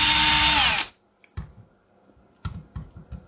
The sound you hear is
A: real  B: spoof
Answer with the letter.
A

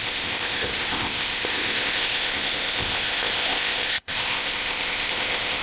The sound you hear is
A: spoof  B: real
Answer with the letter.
A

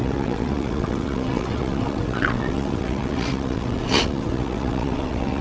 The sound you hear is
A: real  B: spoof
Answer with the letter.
B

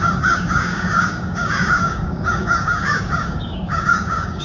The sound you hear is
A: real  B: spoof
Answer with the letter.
B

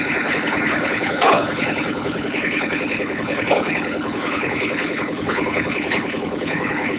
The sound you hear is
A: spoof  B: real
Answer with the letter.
A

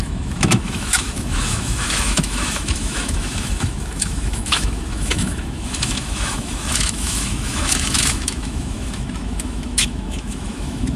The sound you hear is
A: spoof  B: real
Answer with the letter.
A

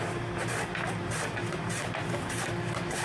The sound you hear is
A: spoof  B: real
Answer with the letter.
B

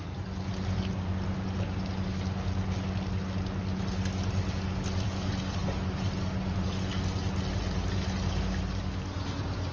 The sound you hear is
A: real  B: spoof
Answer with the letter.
A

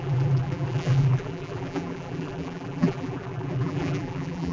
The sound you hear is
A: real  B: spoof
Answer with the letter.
B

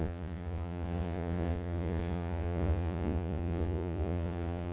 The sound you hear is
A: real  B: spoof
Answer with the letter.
B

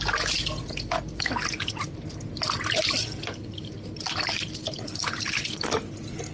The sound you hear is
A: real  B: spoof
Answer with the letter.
A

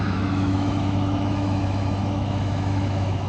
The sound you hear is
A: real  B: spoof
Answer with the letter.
B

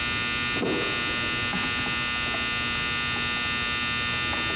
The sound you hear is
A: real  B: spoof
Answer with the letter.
A